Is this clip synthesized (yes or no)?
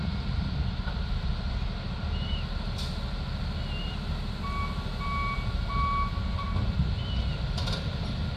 no